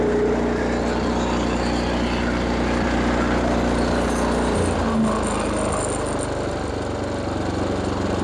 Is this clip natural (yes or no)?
yes